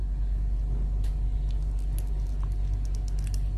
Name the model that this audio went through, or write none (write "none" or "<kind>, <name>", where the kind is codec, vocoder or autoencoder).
none